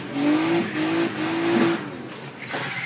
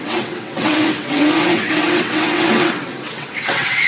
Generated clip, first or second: second